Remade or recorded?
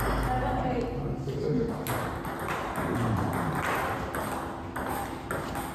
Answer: recorded